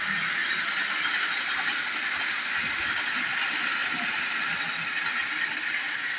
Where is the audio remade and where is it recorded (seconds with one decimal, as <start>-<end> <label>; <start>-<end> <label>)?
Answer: 0.0-0.4 recorded; 0.4-2.2 remade; 2.2-3.8 recorded; 3.8-4.4 remade; 4.4-6.2 recorded